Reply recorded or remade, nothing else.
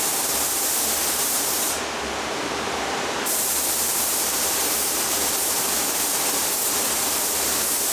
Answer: remade